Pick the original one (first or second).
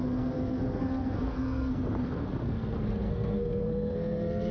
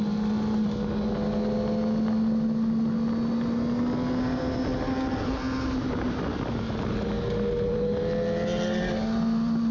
second